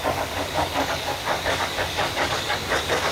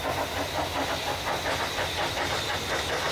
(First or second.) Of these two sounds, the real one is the second